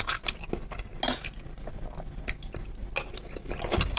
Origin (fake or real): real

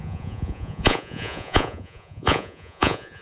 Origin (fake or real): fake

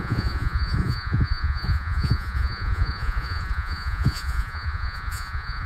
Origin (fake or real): fake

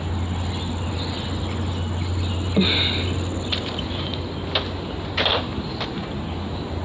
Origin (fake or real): real